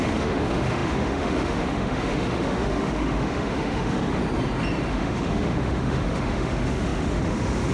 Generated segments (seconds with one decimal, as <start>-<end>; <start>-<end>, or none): 0.0-4.2; 4.9-7.7